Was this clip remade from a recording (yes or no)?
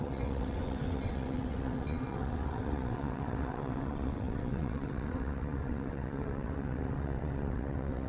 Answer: yes